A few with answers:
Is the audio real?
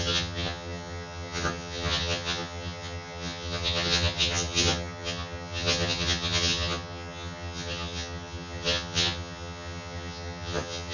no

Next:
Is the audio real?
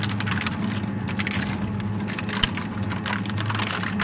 yes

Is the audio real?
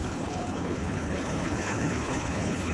no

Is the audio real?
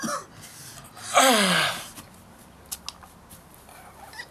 yes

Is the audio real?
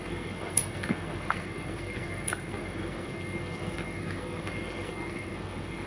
no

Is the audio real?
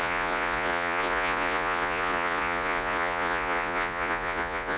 no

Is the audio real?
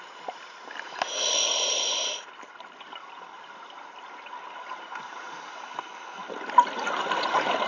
yes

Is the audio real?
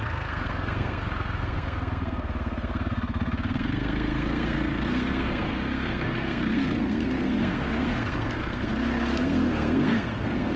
no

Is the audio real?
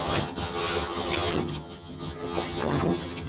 no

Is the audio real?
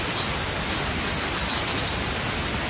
yes